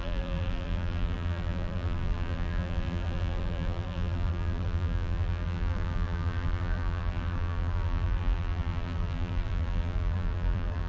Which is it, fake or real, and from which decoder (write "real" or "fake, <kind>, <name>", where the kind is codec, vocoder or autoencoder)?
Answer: fake, vocoder, BigVGAN v2